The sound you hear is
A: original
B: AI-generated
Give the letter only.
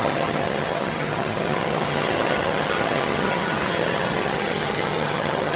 B